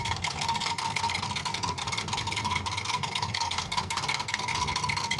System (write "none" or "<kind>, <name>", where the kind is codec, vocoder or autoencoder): codec, SNAC